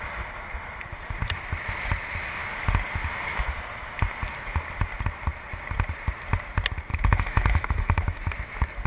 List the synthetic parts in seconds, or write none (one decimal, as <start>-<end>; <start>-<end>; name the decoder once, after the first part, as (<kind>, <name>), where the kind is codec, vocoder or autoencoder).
6.9-8.2 (autoencoder, DAC-VAE)